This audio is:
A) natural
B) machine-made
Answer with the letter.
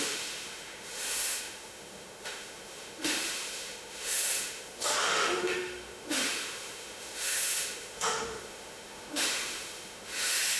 B